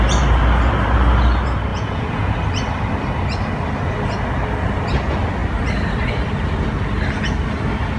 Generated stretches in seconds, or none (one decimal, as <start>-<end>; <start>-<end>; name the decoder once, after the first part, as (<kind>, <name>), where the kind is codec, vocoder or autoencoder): 1.7-2.3 (vocoder, Vocos)